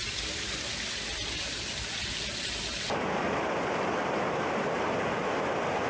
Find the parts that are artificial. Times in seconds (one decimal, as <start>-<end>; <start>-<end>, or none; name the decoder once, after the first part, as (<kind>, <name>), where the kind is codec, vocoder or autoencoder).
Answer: none